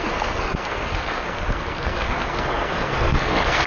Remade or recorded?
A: remade